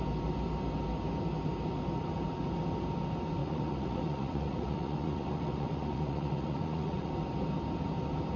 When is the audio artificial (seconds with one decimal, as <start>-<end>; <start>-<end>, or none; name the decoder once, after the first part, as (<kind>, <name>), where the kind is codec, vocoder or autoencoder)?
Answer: 3.4-7.1 (vocoder, Vocos)